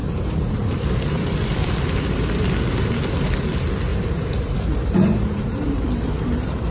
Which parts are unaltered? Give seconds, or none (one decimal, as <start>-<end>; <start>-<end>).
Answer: 1.0-3.9